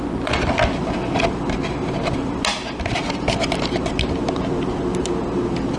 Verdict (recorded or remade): recorded